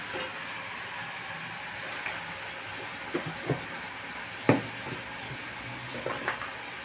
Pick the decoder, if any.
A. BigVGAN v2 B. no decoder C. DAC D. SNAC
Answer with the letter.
B